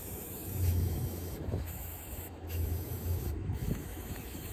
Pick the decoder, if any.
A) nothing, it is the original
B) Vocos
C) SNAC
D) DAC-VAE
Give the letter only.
D